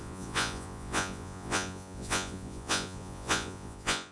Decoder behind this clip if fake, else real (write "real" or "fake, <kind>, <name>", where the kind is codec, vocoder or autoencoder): fake, vocoder, Vocos